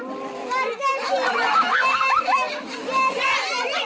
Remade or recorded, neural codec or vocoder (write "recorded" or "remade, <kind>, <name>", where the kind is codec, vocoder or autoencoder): recorded